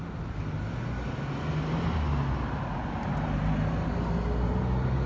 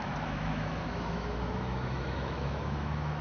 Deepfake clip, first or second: second